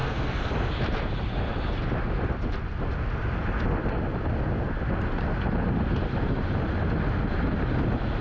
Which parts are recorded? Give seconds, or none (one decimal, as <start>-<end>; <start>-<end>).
0.5-8.2